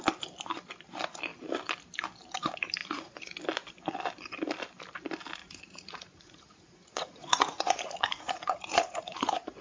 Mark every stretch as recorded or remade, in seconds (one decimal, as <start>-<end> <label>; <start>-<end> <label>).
0.0-2.8 recorded; 2.8-3.4 remade; 3.4-5.4 recorded; 5.4-9.6 remade